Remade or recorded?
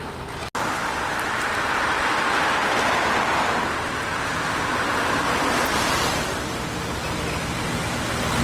recorded